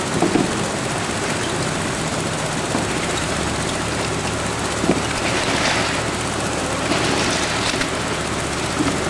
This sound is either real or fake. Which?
real